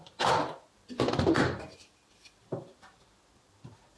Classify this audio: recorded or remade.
remade